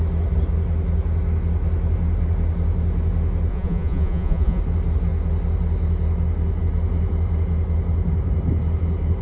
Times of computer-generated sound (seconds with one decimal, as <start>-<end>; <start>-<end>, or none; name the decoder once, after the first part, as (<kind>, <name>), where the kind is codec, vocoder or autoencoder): 3.5-4.6 (vocoder, Vocos)